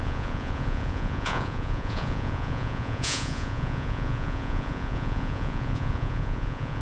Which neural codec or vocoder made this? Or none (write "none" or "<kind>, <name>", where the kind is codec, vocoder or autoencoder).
vocoder, Vocos